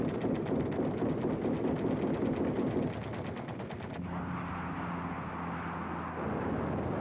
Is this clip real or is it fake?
real